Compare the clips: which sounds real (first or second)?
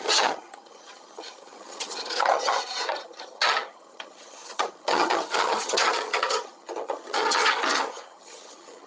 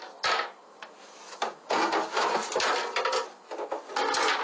second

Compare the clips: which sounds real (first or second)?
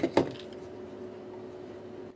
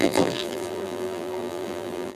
first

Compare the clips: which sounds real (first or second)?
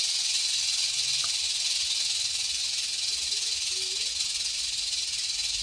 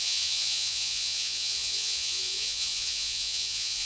first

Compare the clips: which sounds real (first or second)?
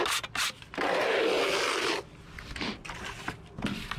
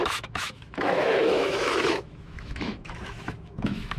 first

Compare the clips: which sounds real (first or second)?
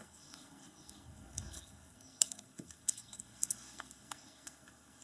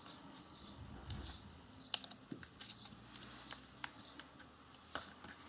second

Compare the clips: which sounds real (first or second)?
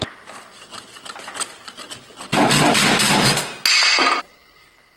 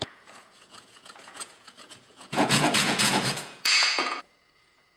first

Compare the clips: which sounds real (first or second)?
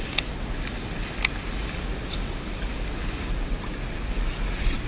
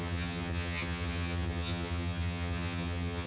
first